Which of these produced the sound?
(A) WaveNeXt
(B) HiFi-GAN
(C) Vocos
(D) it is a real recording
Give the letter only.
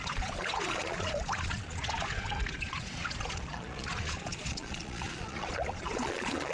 C